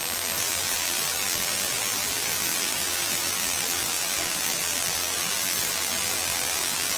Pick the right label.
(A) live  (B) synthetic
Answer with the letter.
B